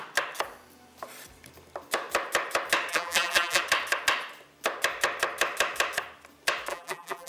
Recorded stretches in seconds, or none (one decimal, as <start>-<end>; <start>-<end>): 0.0-2.9; 3.6-6.7